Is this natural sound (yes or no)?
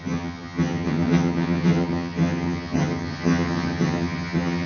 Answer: no